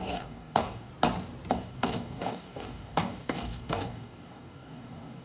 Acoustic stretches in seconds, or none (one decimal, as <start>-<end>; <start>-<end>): 0.9-1.5